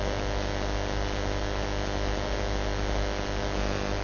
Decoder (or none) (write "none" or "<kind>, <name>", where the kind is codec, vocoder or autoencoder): none